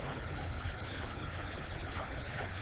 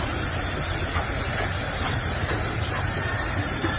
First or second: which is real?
second